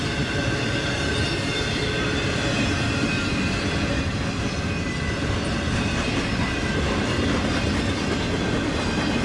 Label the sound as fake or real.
real